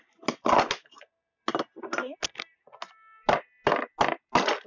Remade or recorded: recorded